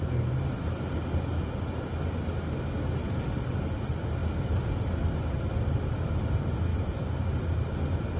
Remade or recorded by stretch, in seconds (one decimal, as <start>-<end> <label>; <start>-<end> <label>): 0.0-8.2 recorded